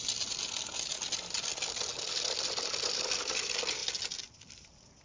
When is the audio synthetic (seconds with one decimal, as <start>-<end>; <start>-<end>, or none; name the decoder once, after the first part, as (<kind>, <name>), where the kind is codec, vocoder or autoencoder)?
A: none